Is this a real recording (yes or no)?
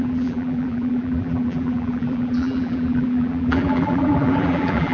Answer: no